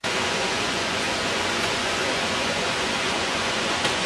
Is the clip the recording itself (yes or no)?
no